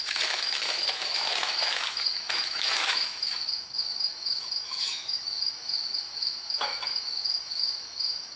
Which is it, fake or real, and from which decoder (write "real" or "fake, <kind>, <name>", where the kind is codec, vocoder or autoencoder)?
fake, autoencoder, DAC-VAE